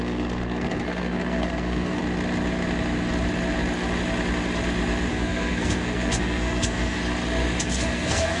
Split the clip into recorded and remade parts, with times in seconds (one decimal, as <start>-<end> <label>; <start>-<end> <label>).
0.0-2.0 remade; 2.0-5.1 recorded; 5.1-7.0 remade; 7.0-7.6 recorded; 7.6-8.4 remade